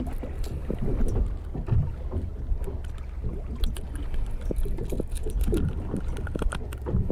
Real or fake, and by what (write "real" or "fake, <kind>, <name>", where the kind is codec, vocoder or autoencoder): real